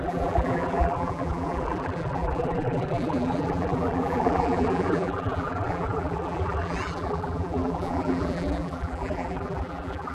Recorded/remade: remade